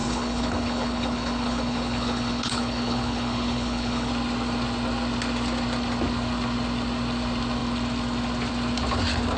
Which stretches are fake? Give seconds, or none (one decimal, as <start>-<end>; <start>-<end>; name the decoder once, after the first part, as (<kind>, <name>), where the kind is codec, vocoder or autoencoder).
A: 0.0-4.1 (codec, HILCodec)